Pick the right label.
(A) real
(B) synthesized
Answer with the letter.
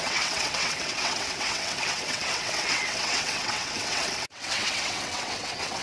B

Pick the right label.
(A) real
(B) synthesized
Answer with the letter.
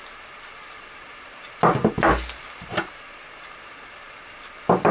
A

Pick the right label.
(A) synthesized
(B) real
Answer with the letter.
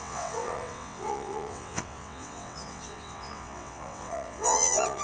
A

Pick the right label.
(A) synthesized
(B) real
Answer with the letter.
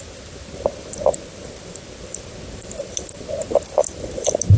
B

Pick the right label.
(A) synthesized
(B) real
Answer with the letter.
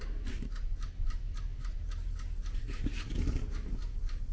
B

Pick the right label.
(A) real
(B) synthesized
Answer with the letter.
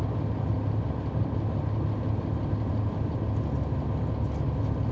A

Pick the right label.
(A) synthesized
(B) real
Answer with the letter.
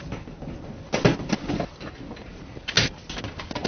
B